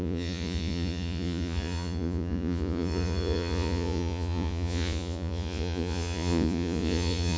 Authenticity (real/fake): fake